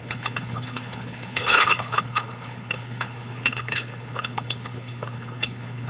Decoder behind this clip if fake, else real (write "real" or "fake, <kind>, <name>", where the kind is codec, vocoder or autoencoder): fake, codec, HILCodec